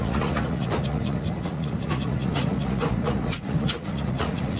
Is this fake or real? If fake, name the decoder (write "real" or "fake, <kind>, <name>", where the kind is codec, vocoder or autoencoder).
fake, vocoder, Vocos